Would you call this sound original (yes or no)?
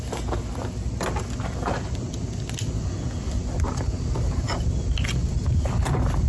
yes